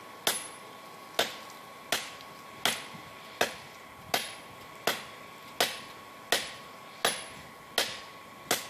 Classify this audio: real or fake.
real